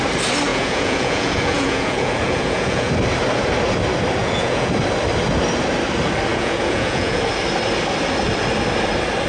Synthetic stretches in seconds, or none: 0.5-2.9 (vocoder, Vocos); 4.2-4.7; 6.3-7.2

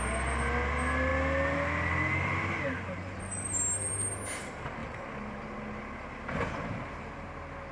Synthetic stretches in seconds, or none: none

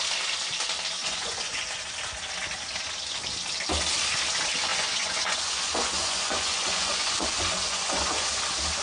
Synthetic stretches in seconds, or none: 1.0-1.6 (vocoder, Vocos); 4.7-8.4

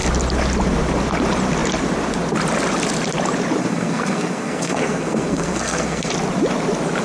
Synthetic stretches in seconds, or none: 3.6-6.1 (codec, SNAC)

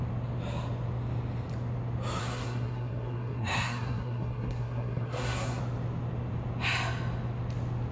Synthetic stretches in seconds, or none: 2.2-5.6 (codec, SNAC)

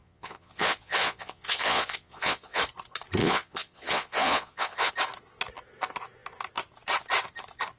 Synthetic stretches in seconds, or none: 0.0-2.6 (vocoder, Vocos); 3.2-4.9

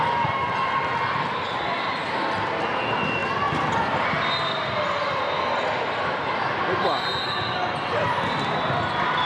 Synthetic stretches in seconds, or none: none